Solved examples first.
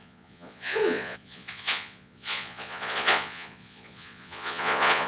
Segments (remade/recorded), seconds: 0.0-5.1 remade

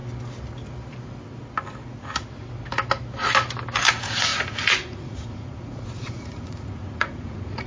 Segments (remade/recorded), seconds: 0.0-3.9 recorded; 3.9-7.7 remade

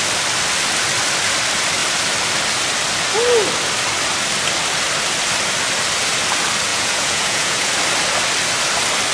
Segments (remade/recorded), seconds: 0.0-6.7 recorded; 6.7-7.7 remade; 7.7-9.1 recorded

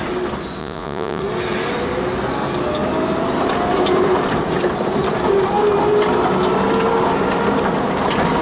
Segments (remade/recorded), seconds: 0.0-0.6 recorded; 0.6-1.2 remade; 1.2-8.4 recorded

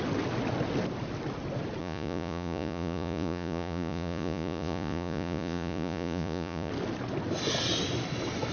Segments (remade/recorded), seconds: 0.0-1.8 recorded; 1.8-6.7 remade; 6.7-8.5 recorded

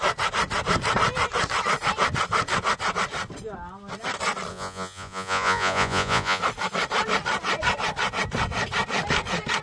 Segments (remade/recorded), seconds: 0.0-4.5 recorded; 4.5-6.4 remade; 6.4-9.6 recorded

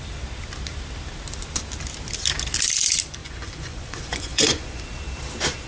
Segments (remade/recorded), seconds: 0.0-3.2 recorded; 3.2-4.8 remade; 4.8-5.7 recorded